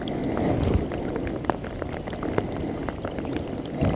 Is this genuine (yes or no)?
yes